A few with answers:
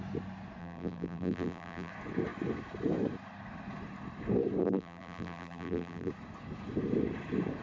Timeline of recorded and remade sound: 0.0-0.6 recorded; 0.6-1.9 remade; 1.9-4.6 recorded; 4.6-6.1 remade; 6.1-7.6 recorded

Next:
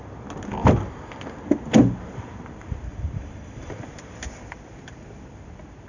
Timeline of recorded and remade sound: 0.0-2.9 recorded; 2.9-3.8 remade; 3.8-5.9 recorded

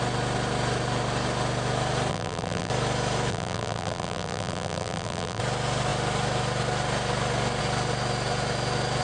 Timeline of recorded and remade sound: 0.0-2.1 recorded; 2.1-2.7 remade; 2.7-3.3 recorded; 3.3-5.4 remade; 5.4-9.0 recorded

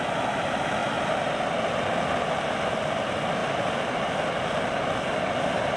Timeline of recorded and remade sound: 0.0-5.8 remade